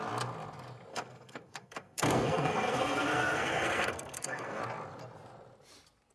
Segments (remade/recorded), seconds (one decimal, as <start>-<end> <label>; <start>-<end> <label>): 0.0-0.9 recorded; 0.9-4.6 remade; 4.6-6.1 recorded